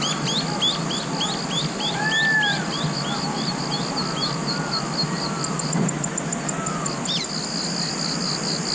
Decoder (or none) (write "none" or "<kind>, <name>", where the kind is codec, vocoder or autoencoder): none